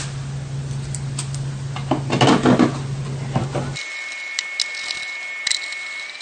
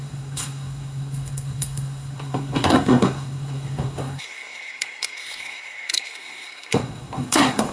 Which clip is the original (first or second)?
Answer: first